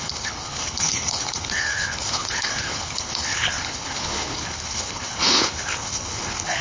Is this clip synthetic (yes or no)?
yes